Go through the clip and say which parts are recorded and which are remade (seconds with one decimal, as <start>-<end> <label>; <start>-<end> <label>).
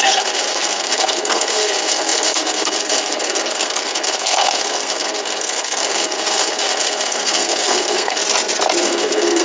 0.0-8.2 remade; 8.2-8.8 recorded; 8.8-9.4 remade